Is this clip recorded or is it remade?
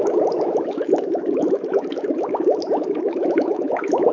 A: remade